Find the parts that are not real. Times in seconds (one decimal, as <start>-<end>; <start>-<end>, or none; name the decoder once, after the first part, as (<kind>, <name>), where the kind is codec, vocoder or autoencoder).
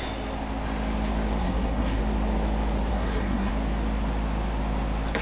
1.4-2.0 (codec, SNAC); 2.9-3.5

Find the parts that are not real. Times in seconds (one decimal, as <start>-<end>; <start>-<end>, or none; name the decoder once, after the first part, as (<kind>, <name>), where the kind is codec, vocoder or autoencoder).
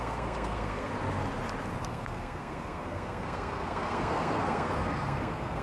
0.0-0.9 (codec, SNAC); 1.8-5.6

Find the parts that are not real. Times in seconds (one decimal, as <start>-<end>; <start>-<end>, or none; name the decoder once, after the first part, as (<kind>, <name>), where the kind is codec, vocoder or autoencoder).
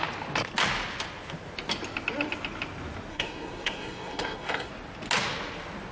3.1-4.7 (codec, SNAC)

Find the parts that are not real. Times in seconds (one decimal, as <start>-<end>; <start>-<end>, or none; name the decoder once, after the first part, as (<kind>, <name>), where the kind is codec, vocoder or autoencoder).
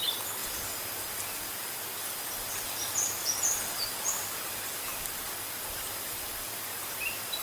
none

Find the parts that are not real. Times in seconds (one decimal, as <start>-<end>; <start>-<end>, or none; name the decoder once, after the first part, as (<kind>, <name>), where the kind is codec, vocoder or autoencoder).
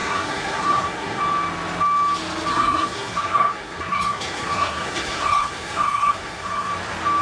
0.0-1.2 (codec, SNAC); 2.5-6.7